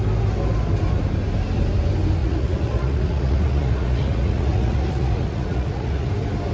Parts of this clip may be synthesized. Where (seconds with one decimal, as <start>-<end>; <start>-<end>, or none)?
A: 2.2-6.1